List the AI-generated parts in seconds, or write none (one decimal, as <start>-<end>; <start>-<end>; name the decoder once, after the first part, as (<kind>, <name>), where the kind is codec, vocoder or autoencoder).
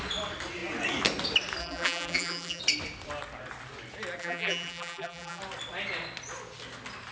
1.6-2.6 (vocoder, BigVGAN v2); 4.2-5.4